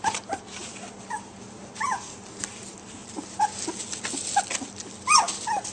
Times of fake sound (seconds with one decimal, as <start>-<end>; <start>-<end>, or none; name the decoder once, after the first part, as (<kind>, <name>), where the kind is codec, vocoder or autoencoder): none